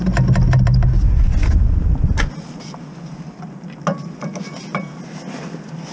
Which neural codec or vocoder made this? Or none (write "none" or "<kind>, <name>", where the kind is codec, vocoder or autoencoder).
none